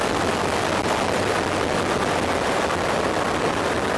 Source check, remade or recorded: recorded